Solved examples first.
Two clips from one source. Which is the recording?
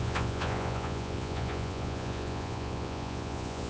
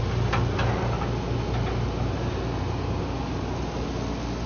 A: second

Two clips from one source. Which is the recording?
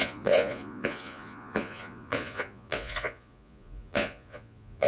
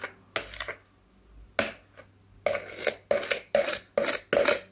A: second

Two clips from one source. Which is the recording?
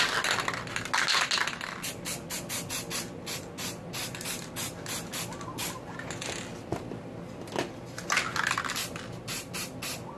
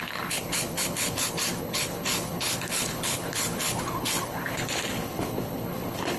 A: first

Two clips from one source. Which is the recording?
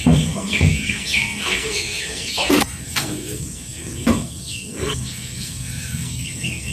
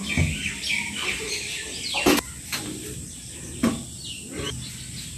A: second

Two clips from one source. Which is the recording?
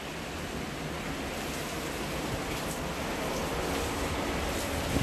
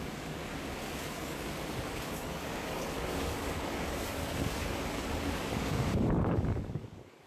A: first